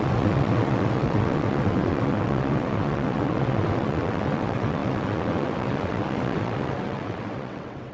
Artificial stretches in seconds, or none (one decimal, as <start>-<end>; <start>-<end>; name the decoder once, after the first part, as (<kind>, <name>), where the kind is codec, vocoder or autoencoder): 0.0-7.9 (vocoder, WaveNeXt)